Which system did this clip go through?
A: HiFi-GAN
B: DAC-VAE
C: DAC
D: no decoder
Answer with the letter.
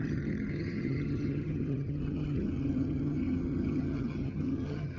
A